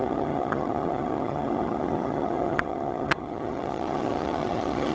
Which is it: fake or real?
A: fake